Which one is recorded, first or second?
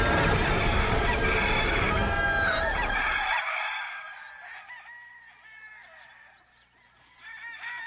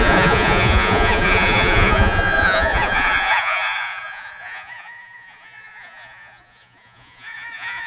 first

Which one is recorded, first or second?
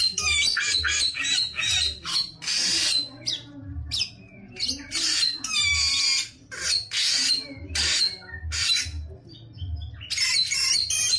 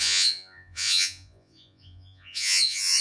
first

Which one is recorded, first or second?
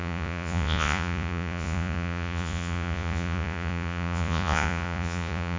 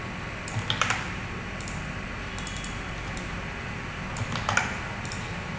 second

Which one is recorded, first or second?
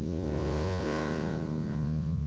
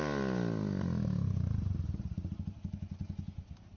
second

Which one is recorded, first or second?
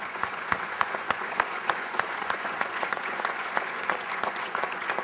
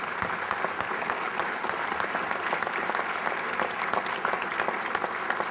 second